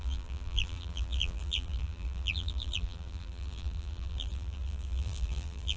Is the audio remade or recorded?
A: remade